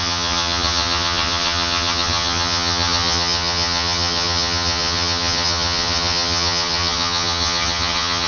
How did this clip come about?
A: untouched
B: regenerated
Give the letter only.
B